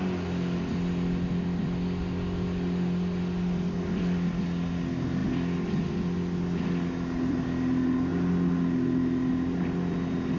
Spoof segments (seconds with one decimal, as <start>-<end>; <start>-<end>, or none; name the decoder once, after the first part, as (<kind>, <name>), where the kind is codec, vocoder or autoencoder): none